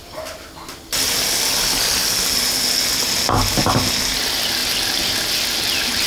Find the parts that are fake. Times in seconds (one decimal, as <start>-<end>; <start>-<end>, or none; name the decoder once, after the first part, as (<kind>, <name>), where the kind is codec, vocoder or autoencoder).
none